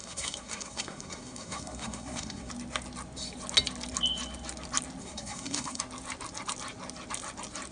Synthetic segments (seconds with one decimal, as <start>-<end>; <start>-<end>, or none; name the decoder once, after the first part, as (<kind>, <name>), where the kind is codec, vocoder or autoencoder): 0.0-2.5 (codec, SNAC); 5.0-5.8